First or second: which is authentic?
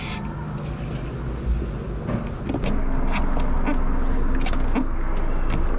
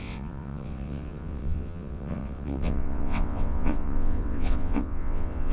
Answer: first